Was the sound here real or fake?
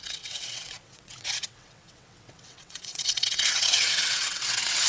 fake